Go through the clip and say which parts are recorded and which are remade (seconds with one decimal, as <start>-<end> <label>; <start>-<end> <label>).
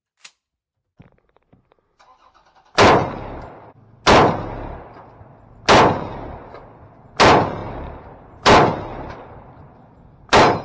0.0-10.6 recorded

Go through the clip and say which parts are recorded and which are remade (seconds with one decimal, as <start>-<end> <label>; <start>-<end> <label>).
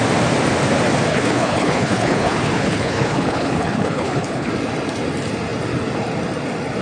0.0-1.1 recorded; 1.1-4.5 remade; 4.5-6.8 recorded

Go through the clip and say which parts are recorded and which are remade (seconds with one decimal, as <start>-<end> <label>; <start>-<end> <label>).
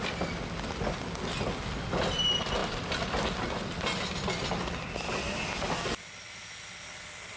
0.0-7.4 recorded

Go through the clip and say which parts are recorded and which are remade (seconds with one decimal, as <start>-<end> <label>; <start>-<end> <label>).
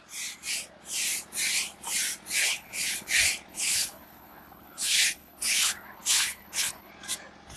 0.0-2.4 recorded; 2.4-3.1 remade; 3.1-3.5 recorded; 3.5-6.9 remade; 6.9-7.6 recorded